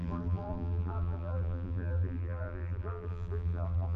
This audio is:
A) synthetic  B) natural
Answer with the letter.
A